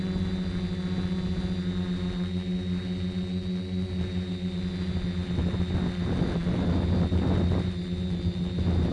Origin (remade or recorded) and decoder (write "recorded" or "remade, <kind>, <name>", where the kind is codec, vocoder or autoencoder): recorded